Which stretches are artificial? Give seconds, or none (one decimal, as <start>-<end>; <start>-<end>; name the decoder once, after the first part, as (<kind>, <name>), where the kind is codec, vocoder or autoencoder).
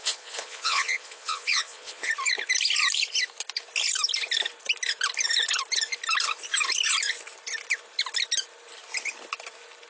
0.0-2.1 (vocoder, Vocos)